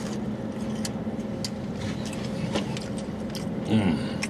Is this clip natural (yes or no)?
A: yes